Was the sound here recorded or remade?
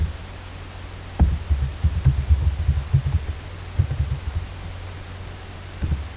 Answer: recorded